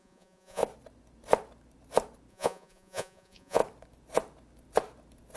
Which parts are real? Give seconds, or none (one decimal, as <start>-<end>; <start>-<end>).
0.6-2.3; 3.6-5.4